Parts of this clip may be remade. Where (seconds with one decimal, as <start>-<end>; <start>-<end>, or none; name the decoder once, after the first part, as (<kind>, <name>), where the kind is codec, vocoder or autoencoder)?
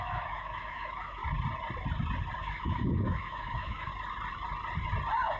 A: 0.0-1.2 (autoencoder, DAC-VAE); 2.4-3.9